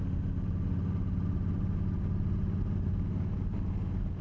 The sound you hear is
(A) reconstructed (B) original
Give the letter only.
B